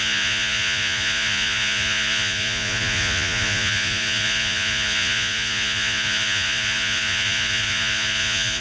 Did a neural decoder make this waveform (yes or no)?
yes